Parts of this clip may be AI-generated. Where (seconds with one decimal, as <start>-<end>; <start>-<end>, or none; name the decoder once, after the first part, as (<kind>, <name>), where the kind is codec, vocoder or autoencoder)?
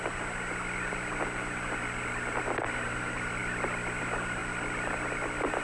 none